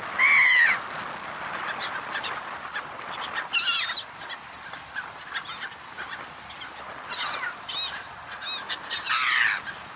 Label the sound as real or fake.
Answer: real